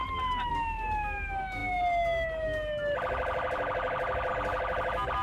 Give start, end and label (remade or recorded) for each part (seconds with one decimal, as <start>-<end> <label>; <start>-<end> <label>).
0.0-5.2 recorded